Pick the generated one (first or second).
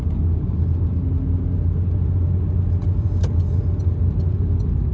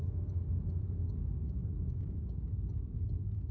second